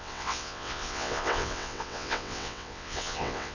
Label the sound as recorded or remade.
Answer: remade